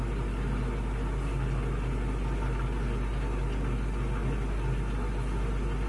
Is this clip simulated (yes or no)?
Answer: no